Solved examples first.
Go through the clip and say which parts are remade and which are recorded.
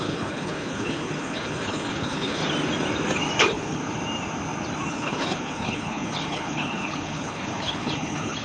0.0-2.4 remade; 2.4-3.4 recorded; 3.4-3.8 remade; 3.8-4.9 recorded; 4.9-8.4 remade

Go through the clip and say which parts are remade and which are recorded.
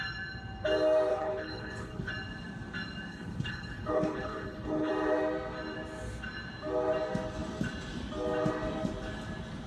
0.0-1.1 recorded; 1.1-2.1 remade; 2.1-3.1 recorded; 3.1-4.9 remade; 4.9-9.7 recorded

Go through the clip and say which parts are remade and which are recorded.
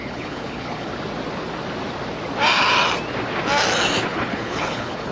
0.0-0.9 remade; 0.9-4.0 recorded; 4.0-5.1 remade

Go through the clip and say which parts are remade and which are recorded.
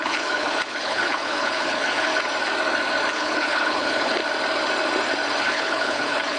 0.0-2.1 remade; 2.1-3.1 recorded; 3.1-4.2 remade; 4.2-5.4 recorded; 5.4-6.4 remade